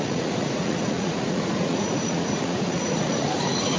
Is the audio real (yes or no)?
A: no